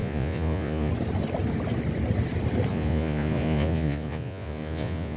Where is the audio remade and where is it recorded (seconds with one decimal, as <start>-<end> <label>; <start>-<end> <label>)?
0.0-0.9 remade; 0.9-2.7 recorded; 2.7-5.2 remade